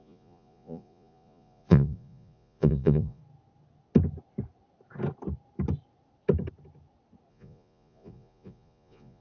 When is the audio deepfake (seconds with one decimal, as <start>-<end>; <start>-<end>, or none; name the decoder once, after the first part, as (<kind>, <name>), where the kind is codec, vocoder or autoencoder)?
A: 0.0-3.2 (vocoder, Vocos); 7.3-9.2